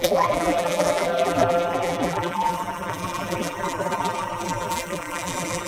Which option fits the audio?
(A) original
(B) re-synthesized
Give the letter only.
B